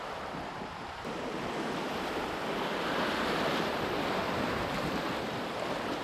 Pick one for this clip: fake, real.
fake